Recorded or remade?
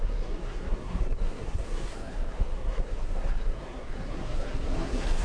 remade